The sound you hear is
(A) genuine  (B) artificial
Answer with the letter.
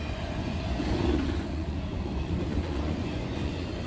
B